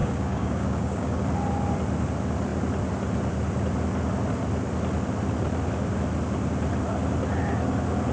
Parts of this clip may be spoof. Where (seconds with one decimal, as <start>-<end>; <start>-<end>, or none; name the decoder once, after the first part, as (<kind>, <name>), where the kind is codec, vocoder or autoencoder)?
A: 0.0-1.2 (codec, DAC)